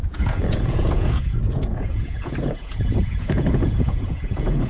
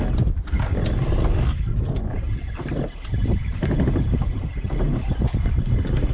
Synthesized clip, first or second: first